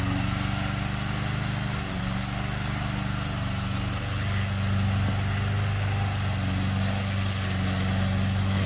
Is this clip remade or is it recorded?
recorded